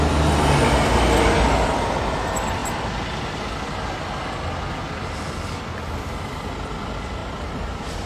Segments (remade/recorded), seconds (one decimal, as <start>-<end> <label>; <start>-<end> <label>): 0.0-7.2 recorded; 7.2-8.1 remade